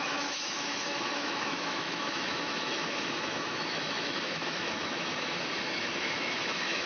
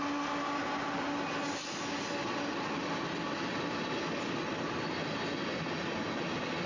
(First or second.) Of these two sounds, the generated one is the first